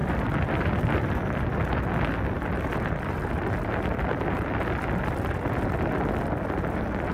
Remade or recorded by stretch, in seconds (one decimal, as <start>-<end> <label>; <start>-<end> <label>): 0.0-7.1 recorded